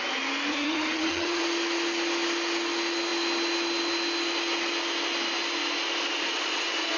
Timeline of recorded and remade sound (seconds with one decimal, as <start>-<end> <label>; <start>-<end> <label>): 0.0-0.5 recorded; 0.5-1.4 remade; 1.4-7.0 recorded

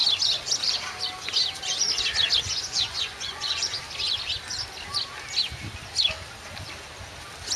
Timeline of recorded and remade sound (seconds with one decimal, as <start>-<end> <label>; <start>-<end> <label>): 0.0-2.4 recorded; 2.4-3.8 remade; 3.8-7.6 recorded

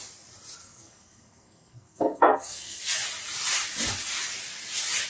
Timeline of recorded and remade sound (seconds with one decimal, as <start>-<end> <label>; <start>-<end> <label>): 0.0-0.6 recorded; 0.6-2.8 remade; 2.8-5.1 recorded